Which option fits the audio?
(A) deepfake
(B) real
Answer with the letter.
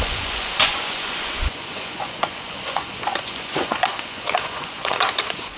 A